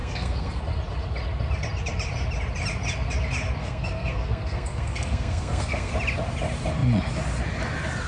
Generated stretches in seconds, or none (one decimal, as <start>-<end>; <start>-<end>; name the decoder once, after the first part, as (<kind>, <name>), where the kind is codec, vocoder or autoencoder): 0.0-0.6 (codec, SNAC); 3.6-5.9